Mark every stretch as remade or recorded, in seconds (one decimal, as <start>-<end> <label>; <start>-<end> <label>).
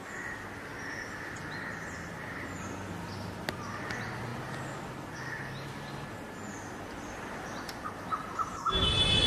0.0-9.3 recorded